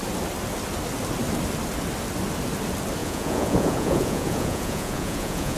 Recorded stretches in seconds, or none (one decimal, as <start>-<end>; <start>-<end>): 0.0-3.0